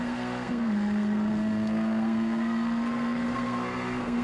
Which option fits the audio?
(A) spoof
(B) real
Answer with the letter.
A